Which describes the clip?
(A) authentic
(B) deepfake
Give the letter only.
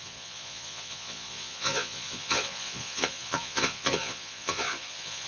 B